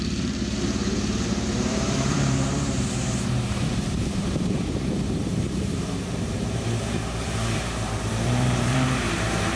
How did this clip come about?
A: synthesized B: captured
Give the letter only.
A